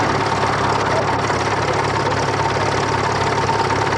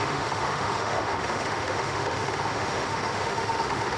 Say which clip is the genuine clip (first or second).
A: first